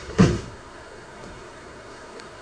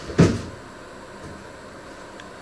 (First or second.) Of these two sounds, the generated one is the first